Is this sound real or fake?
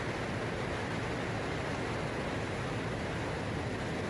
real